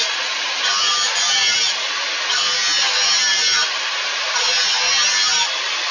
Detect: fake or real real